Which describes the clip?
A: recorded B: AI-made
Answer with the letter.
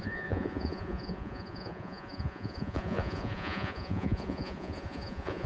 B